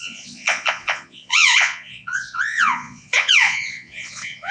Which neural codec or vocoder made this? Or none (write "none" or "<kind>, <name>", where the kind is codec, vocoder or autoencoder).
vocoder, Vocos